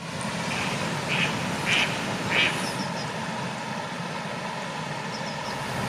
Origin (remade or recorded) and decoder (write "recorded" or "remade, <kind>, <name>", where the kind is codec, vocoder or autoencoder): recorded